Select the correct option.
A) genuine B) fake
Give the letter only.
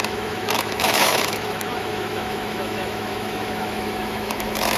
B